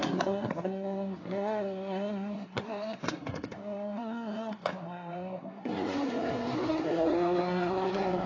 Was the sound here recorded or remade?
remade